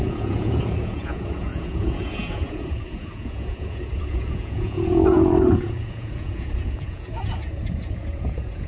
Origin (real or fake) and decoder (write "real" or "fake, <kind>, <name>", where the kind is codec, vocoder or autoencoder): fake, vocoder, Vocos